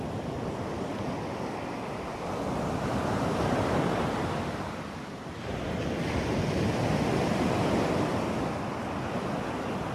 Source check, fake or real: real